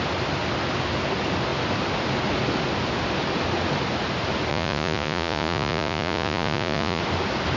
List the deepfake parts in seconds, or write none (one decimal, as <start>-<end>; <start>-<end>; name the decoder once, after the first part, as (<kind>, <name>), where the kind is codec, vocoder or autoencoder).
4.5-7.0 (vocoder, Vocos)